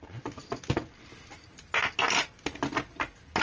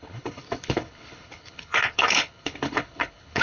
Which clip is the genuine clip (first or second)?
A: first